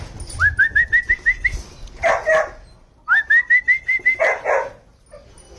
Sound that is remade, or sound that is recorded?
recorded